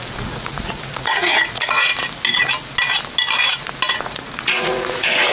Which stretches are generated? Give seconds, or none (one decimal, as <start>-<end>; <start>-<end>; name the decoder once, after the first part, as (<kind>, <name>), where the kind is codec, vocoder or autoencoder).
0.0-1.9 (vocoder, Vocos); 3.9-5.3